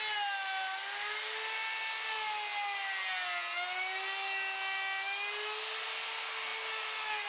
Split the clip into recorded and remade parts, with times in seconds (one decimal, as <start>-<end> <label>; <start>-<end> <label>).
0.0-7.3 recorded